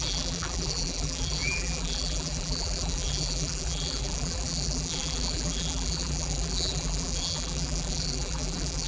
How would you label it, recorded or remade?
remade